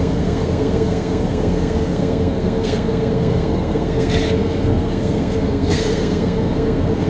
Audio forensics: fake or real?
fake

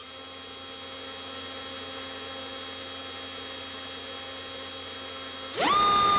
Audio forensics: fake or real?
real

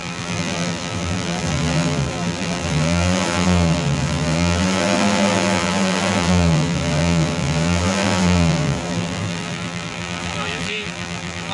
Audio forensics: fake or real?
fake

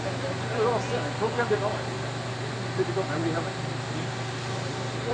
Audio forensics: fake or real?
real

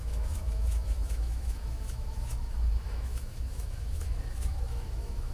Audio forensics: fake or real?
fake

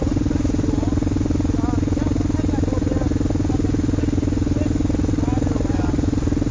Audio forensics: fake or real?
real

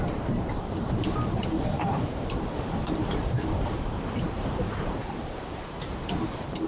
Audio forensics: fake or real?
fake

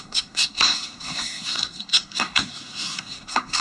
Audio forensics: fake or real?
fake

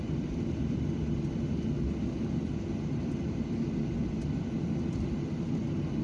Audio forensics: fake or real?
real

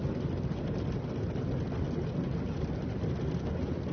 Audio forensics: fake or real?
real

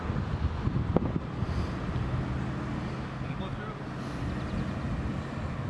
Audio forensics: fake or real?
real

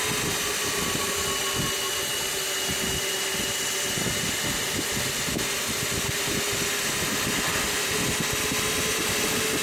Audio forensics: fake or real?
real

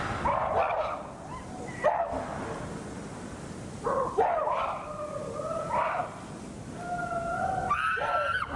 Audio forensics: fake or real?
real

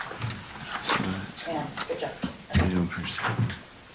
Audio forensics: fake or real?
real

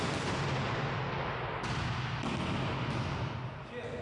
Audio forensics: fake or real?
real